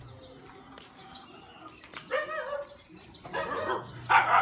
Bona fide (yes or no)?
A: yes